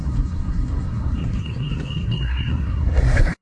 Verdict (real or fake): fake